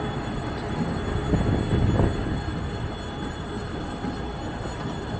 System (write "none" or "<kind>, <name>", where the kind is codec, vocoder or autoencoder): none